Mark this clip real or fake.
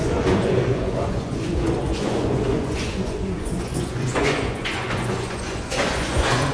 fake